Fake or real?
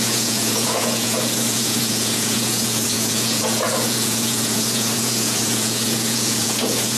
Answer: fake